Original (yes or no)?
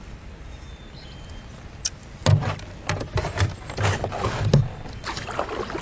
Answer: yes